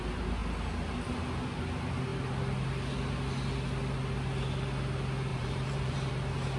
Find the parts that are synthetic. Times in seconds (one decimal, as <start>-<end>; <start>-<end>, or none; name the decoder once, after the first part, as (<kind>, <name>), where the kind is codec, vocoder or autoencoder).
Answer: 5.3-6.1 (vocoder, BigVGAN v2)